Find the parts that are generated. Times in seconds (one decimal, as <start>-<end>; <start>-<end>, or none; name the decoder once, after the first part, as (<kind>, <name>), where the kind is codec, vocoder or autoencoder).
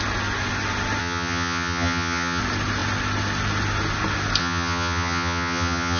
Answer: 1.0-2.4 (vocoder, HiFi-GAN); 4.4-6.0